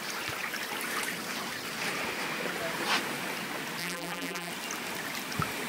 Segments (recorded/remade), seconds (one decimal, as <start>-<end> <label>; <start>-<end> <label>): 0.0-3.8 recorded; 3.8-4.5 remade; 4.5-5.7 recorded